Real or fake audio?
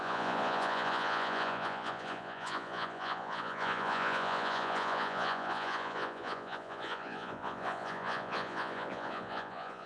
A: fake